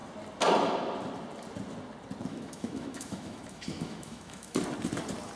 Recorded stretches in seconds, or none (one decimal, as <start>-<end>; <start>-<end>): 0.0-2.3; 4.6-5.4